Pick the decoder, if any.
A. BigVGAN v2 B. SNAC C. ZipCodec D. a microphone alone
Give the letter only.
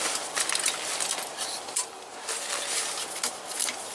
D